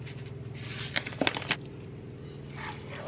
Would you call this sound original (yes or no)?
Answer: yes